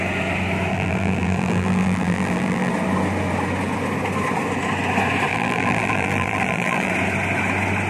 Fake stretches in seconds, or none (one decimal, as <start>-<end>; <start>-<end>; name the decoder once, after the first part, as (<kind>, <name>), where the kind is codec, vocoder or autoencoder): 0.7-2.7 (vocoder, BigVGAN v2); 5.3-6.9